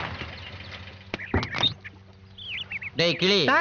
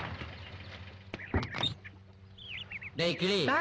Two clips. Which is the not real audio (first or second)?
second